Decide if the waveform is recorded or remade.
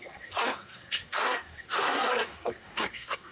remade